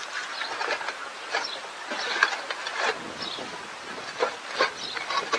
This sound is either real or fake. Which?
real